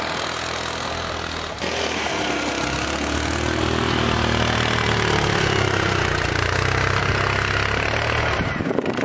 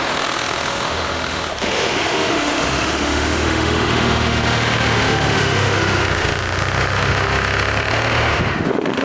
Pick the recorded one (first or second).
first